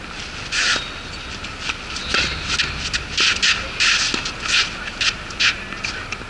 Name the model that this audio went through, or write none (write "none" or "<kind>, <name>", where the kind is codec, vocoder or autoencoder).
none